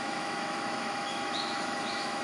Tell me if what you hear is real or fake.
fake